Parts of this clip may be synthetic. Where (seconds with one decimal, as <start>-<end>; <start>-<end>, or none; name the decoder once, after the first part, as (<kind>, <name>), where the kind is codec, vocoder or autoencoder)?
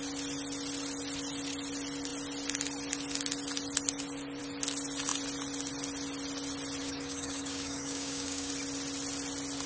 6.8-8.5 (codec, DAC)